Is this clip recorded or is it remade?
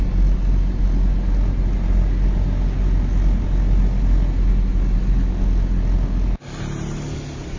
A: recorded